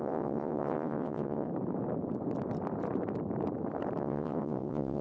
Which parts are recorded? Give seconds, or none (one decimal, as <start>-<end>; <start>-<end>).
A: 1.5-4.0